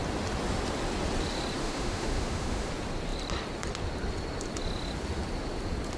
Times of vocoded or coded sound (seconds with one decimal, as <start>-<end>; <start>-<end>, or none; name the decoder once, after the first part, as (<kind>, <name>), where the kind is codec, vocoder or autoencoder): 1.6-2.7 (autoencoder, DAC-VAE)